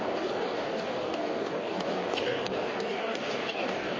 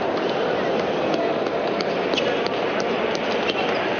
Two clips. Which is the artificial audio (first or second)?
first